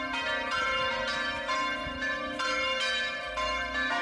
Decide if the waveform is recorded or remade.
remade